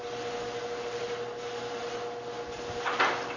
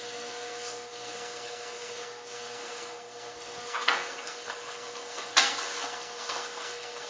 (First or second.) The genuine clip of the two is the first